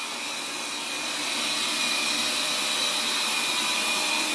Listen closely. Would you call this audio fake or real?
real